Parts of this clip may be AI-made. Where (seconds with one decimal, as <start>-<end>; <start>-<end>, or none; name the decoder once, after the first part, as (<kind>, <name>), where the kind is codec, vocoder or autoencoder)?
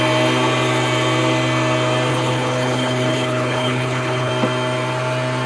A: 2.1-4.3 (codec, HILCodec)